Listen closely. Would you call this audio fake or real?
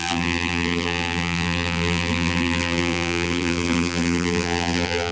fake